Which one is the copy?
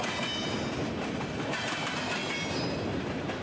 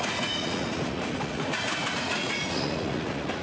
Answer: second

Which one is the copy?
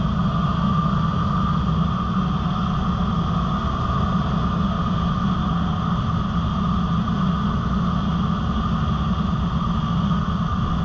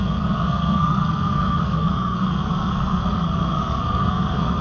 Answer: second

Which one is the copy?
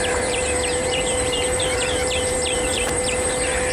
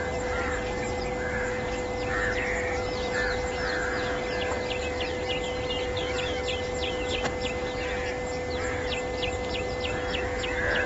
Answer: first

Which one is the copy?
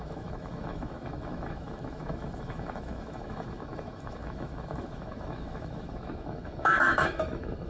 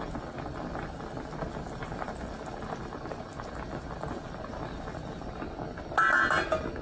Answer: first